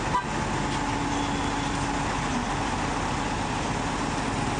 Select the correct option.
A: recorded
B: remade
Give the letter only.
A